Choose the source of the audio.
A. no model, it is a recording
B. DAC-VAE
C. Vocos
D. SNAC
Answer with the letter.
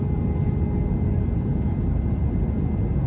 A